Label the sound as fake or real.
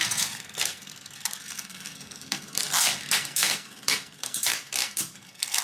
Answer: fake